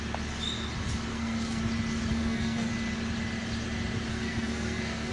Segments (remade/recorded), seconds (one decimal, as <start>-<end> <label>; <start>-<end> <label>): 0.0-1.1 recorded; 1.1-1.6 remade; 1.6-2.1 recorded; 2.1-2.7 remade; 2.7-4.1 recorded; 4.1-5.1 remade